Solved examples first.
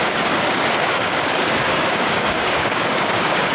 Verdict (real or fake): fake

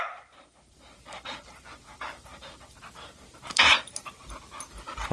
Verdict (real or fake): fake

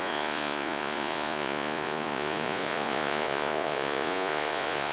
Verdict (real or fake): fake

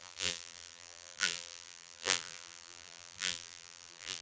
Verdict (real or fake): fake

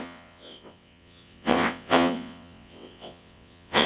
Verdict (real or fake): fake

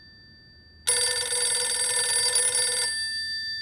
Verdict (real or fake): real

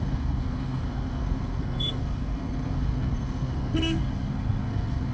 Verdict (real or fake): fake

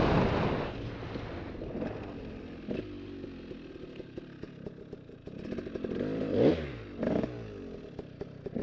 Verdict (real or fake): real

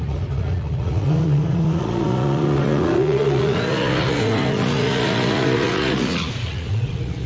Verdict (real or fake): fake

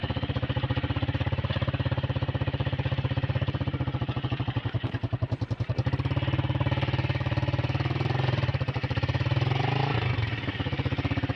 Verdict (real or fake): fake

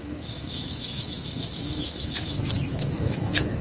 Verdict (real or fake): fake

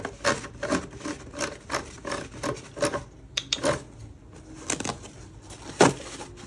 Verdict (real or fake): real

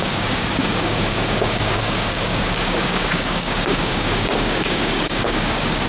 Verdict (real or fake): fake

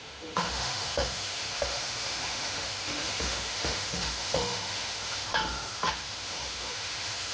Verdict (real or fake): fake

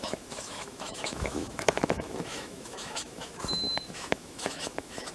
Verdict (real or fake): fake